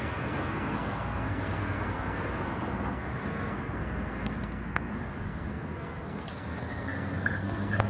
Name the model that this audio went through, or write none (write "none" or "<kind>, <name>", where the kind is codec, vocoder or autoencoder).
codec, SNAC